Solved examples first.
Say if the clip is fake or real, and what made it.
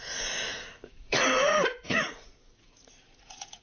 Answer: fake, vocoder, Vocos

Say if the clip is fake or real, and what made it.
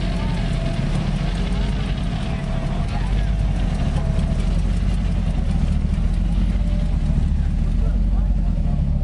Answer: real